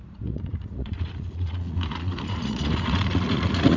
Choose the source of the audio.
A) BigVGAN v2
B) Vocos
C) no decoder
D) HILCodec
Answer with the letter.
B